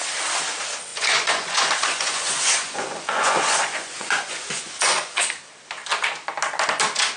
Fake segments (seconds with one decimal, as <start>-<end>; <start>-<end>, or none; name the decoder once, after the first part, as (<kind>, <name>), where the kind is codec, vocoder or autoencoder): 0.9-5.2 (vocoder, Vocos)